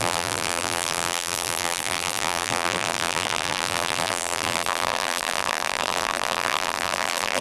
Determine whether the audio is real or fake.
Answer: fake